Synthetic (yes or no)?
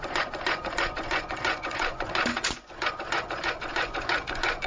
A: yes